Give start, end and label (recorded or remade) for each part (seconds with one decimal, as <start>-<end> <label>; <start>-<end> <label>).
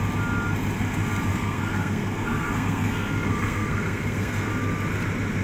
0.0-1.3 recorded; 1.3-4.5 remade; 4.5-5.4 recorded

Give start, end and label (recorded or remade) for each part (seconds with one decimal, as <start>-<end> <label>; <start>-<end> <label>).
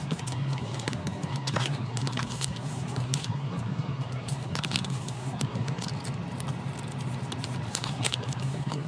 0.0-5.9 remade; 5.9-7.7 recorded; 7.7-8.9 remade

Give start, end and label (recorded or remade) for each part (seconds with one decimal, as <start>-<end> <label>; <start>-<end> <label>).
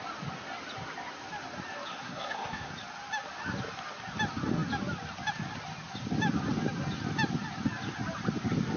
0.0-1.9 recorded; 1.9-2.7 remade; 2.7-8.8 recorded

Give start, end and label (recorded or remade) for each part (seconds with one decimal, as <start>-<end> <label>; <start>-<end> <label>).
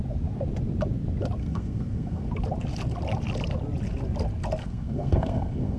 0.0-1.4 recorded; 1.4-2.3 remade; 2.3-4.6 recorded; 4.6-5.8 remade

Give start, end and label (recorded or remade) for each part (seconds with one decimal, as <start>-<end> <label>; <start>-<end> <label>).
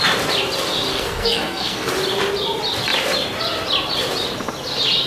0.0-0.9 recorded; 0.9-1.9 remade; 1.9-5.1 recorded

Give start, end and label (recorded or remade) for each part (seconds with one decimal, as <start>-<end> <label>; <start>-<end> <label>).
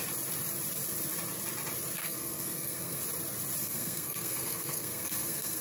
0.0-2.0 recorded; 2.0-3.0 remade; 3.0-3.6 recorded; 3.6-5.6 remade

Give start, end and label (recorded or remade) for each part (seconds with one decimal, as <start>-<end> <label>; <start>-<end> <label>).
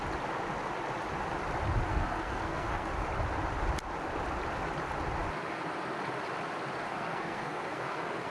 0.0-1.9 recorded; 1.9-2.9 remade; 2.9-6.9 recorded; 6.9-8.3 remade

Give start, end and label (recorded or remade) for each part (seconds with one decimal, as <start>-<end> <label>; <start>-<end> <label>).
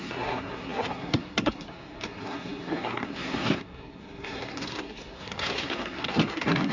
0.0-6.7 remade